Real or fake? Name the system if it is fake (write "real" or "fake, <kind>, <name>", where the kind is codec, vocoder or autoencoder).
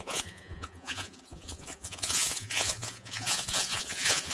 fake, vocoder, Vocos